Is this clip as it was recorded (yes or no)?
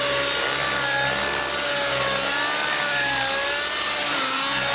yes